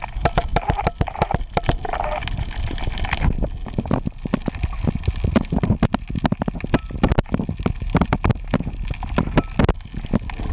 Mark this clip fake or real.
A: real